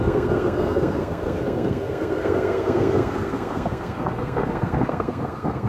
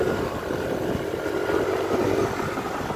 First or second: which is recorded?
second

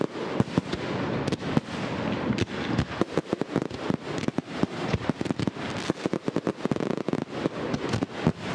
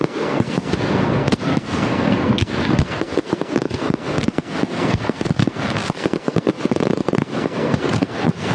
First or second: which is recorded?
first